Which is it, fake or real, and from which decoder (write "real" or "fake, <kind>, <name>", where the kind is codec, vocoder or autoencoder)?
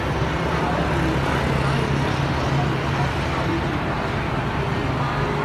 real